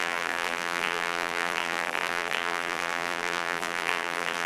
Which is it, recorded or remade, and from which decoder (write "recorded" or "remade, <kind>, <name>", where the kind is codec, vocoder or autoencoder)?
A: remade, vocoder, BigVGAN v2